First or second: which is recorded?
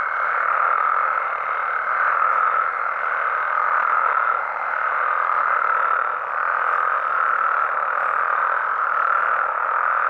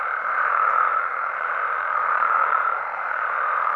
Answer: first